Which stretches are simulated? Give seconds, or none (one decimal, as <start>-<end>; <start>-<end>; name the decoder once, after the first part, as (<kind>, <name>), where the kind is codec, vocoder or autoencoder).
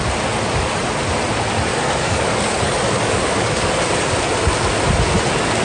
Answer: 1.7-3.7 (codec, DAC)